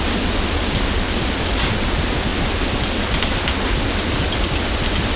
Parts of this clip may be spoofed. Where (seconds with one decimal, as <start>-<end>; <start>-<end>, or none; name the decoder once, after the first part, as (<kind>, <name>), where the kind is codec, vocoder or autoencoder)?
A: none